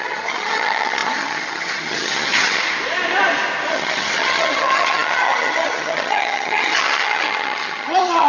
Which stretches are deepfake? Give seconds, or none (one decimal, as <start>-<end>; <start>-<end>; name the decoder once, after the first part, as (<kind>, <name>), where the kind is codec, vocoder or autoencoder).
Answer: 0.0-2.7 (vocoder, HiFi-GAN); 3.7-8.3